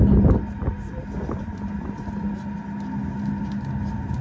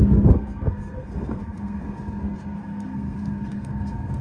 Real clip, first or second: first